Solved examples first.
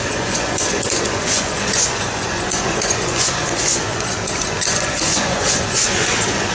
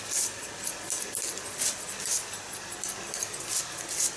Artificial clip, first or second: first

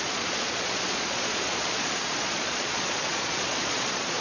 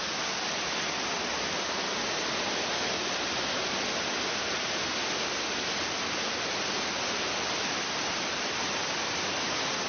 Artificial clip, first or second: first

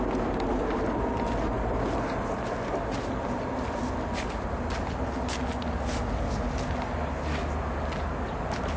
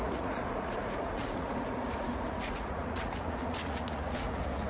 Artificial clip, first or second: second